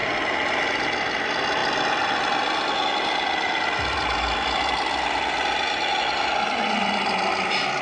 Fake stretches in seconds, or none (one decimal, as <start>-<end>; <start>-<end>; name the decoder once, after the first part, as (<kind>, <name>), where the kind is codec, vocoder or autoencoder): none